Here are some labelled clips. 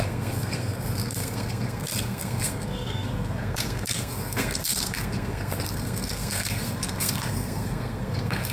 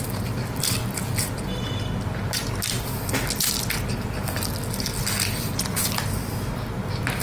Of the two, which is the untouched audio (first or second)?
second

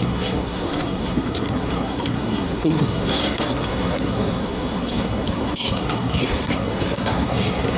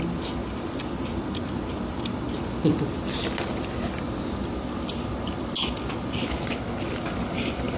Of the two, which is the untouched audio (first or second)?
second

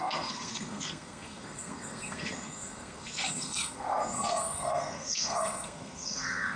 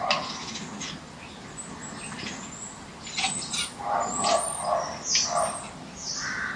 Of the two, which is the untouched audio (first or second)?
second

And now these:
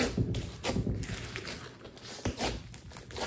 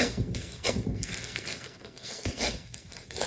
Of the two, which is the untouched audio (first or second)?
first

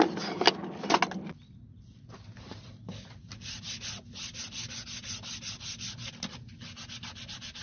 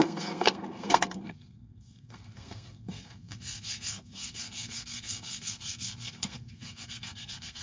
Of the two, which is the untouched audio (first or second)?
first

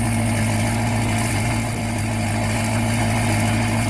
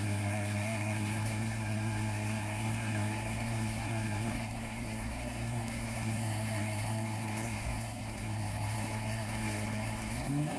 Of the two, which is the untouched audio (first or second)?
first